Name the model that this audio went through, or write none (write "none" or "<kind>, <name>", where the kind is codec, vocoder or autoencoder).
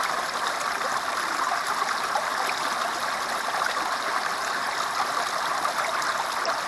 none